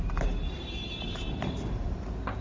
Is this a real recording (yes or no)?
yes